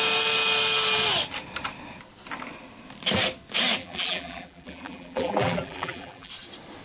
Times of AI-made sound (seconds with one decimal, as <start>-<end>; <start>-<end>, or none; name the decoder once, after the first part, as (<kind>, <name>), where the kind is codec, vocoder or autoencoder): 3.8-6.3 (vocoder, BigVGAN v2)